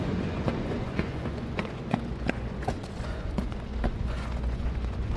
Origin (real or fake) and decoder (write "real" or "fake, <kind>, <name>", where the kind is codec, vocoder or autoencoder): fake, vocoder, Vocos